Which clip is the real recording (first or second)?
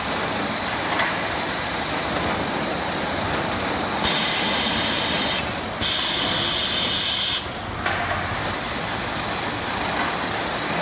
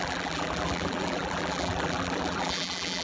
first